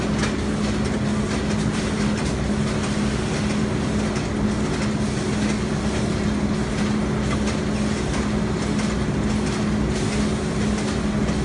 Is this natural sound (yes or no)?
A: yes